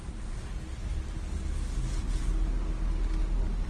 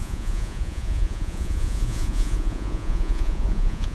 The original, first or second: first